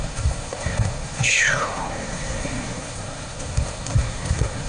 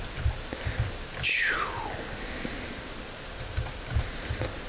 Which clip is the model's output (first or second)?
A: first